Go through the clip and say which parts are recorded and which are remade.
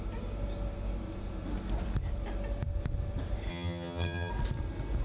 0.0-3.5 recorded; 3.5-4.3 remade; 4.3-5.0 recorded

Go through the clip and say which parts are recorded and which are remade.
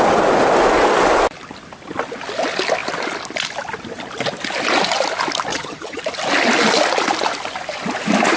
0.0-5.5 recorded; 5.5-6.0 remade; 6.0-8.4 recorded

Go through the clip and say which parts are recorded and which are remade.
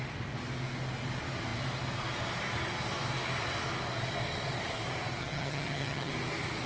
0.0-5.2 recorded; 5.2-6.1 remade; 6.1-6.7 recorded